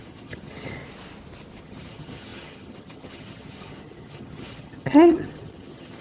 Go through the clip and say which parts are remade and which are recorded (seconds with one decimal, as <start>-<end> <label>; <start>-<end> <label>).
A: 0.0-0.8 remade; 0.8-1.6 recorded; 1.6-6.0 remade